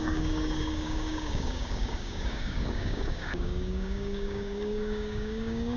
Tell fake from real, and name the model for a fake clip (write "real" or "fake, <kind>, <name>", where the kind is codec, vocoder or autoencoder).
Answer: fake, codec, DAC